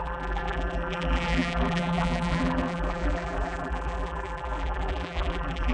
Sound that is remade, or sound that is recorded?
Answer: remade